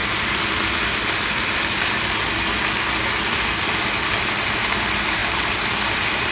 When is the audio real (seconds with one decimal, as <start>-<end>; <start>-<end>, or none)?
1.9-6.3